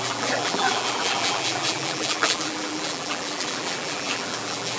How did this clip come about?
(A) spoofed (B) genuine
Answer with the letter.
A